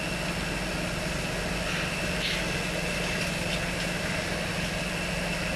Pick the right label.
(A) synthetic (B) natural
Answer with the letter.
B